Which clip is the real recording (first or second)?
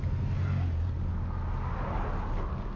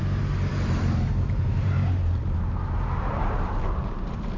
first